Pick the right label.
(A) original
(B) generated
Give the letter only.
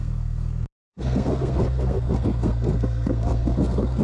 B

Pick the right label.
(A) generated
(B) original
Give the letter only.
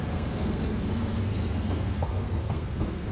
A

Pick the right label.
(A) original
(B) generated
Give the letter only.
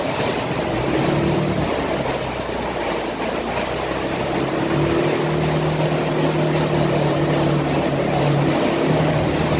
A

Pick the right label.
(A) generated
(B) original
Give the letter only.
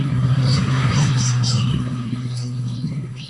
A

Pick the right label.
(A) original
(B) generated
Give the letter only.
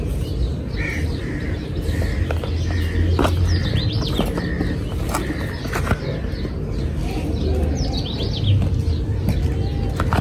A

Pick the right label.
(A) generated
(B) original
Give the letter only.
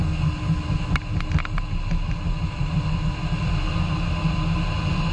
B